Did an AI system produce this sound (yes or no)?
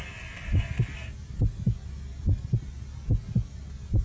no